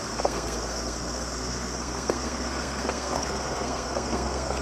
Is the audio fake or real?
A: fake